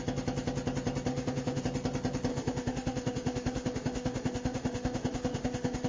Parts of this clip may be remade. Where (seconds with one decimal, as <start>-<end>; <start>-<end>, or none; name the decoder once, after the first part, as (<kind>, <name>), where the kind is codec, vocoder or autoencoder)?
1.1-1.6 (autoencoder, DAC-VAE); 2.3-5.9